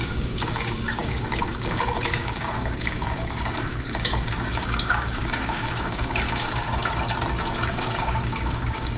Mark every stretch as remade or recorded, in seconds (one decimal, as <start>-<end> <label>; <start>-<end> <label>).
0.0-6.8 remade; 6.8-7.7 recorded; 7.7-9.0 remade